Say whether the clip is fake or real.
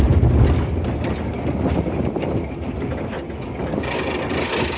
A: real